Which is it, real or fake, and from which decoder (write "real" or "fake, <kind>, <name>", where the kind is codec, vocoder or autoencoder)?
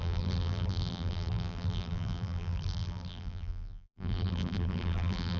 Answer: fake, vocoder, BigVGAN v2